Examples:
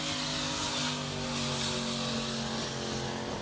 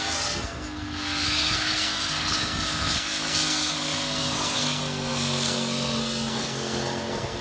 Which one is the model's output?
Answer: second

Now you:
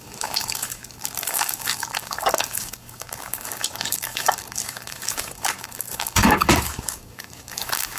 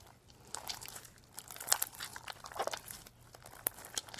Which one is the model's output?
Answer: first